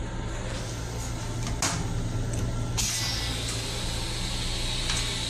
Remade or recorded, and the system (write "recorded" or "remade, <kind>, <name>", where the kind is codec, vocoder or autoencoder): recorded